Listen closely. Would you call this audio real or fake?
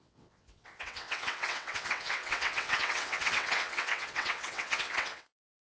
fake